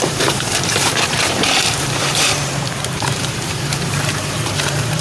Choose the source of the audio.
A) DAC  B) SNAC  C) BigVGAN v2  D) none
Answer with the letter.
C